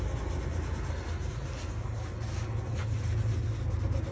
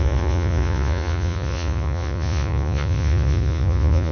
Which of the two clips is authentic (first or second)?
first